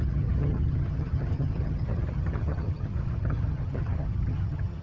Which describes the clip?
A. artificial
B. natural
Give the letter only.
A